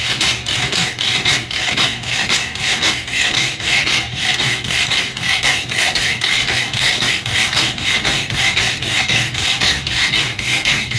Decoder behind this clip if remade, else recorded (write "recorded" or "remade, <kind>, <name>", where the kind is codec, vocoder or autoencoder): remade, codec, DAC